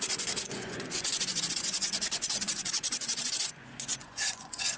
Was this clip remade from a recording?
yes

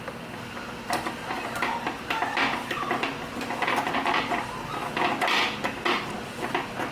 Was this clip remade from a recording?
no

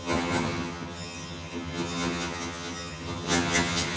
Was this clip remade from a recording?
yes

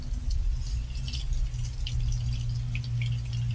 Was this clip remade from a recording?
no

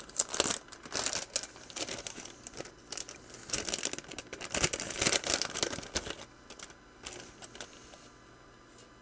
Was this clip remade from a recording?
no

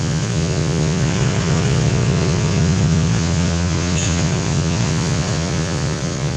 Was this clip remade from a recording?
yes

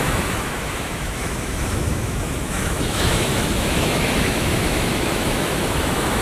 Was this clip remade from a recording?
yes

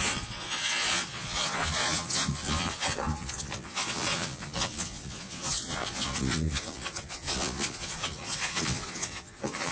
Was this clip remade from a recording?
yes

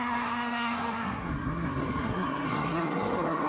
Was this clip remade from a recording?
yes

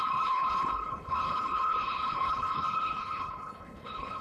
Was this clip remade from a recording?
yes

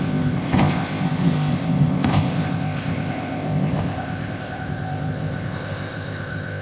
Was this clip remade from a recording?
yes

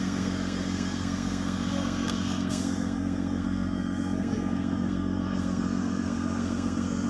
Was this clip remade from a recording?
yes